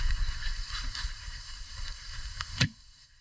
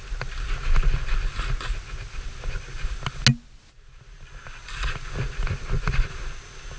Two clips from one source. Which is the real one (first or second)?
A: second